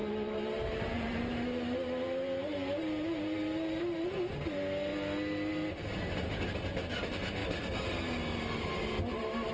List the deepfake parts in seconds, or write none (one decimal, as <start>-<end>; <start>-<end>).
0.0-4.2